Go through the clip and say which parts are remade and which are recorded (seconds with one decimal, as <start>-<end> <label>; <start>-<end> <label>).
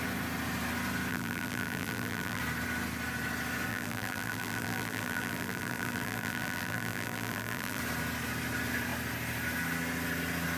0.0-1.1 recorded; 1.1-2.4 remade; 2.4-3.7 recorded; 3.7-7.8 remade; 7.8-10.6 recorded